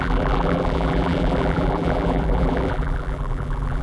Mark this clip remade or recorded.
remade